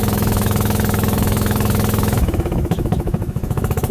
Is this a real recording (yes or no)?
no